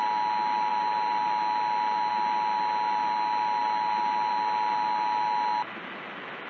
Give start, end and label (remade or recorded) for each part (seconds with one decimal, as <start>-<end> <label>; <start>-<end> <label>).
0.0-6.5 recorded